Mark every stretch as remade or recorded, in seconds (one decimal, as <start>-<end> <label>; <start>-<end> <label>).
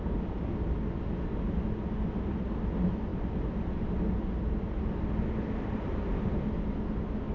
0.0-7.3 recorded